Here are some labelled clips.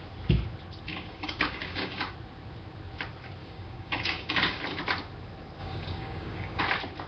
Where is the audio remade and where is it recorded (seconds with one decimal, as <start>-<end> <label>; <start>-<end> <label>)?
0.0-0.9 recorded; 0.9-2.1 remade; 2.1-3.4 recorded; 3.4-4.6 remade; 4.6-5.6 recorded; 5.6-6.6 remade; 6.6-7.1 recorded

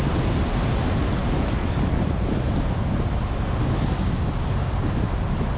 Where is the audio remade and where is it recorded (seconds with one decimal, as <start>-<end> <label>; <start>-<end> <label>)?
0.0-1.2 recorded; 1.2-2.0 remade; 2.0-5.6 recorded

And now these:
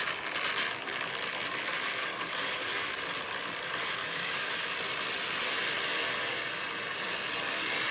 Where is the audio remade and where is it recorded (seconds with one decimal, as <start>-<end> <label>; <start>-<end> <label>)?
0.0-2.0 recorded; 2.0-2.7 remade; 2.7-4.0 recorded; 4.0-4.5 remade; 4.5-7.9 recorded

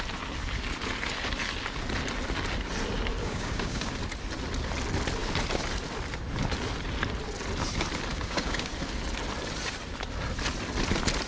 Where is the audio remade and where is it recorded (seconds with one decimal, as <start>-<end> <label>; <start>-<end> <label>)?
0.0-3.2 recorded; 3.2-3.9 remade; 3.9-8.1 recorded; 8.1-8.7 remade; 8.7-11.3 recorded

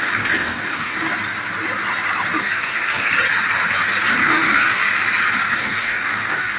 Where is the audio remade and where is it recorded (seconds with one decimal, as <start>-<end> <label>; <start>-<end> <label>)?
0.0-1.1 remade; 1.1-2.4 recorded; 2.4-3.1 remade; 3.1-4.1 recorded; 4.1-4.9 remade; 4.9-5.5 recorded; 5.5-6.6 remade

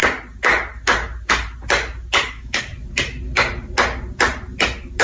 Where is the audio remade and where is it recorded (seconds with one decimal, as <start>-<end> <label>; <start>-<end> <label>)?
0.0-2.3 recorded; 2.3-2.7 remade; 2.7-5.0 recorded